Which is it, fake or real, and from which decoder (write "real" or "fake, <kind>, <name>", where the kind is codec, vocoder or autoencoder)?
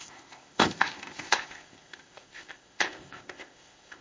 fake, codec, ZipCodec